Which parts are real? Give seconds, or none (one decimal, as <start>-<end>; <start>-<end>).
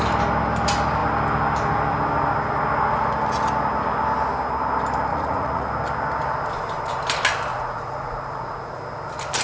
0.0-5.1; 5.7-7.5; 8.8-9.4